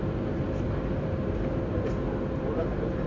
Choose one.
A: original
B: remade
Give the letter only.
A